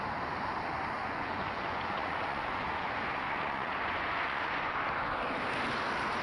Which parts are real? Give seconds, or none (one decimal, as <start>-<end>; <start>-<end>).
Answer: 0.0-1.0; 4.7-6.2